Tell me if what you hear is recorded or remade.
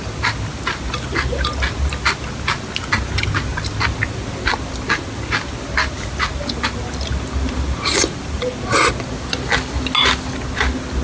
recorded